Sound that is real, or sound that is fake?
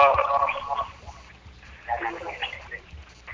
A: real